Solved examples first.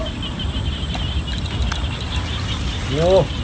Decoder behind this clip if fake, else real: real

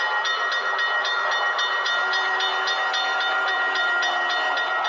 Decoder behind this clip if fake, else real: real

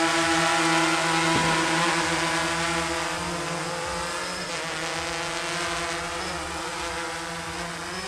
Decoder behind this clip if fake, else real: real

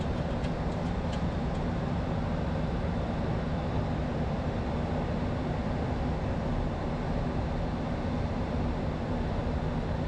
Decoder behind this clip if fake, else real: real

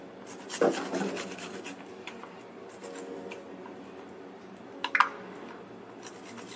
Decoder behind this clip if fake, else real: real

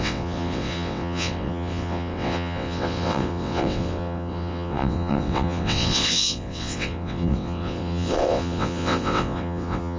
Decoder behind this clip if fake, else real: fake, vocoder, WaveNeXt